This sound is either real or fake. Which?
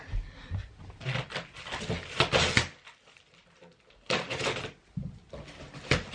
real